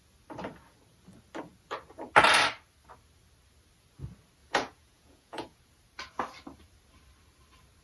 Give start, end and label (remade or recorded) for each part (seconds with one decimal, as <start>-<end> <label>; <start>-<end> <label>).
0.0-4.4 recorded; 4.4-5.6 remade; 5.6-7.8 recorded